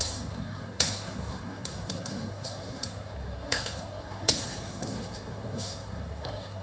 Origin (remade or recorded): remade